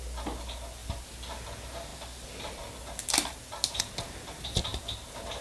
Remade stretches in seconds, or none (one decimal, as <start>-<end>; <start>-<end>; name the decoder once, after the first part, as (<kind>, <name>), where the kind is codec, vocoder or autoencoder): none